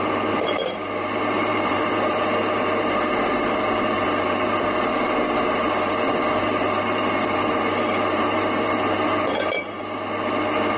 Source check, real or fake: fake